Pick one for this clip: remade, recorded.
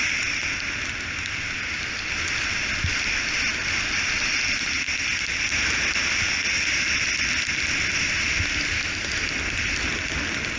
recorded